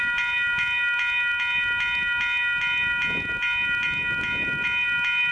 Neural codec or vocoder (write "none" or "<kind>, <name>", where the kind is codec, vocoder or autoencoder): none